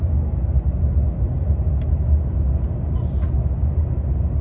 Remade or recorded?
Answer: recorded